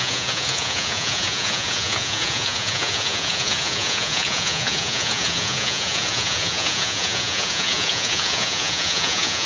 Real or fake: fake